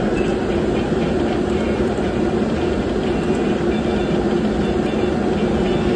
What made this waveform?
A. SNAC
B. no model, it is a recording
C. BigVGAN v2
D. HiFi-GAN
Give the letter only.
B